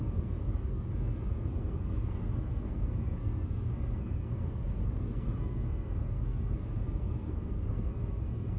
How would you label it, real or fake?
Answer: fake